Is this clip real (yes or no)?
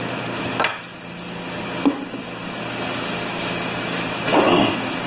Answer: yes